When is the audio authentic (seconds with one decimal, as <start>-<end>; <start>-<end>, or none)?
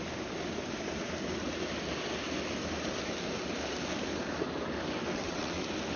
0.0-5.1; 5.6-6.0